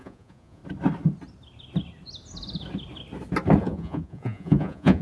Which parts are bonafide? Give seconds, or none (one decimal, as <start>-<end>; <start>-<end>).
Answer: 0.6-3.6